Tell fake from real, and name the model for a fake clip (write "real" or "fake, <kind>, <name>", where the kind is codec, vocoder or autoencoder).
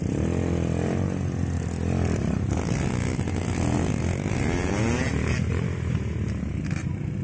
real